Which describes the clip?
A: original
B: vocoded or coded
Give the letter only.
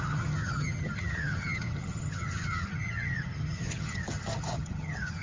B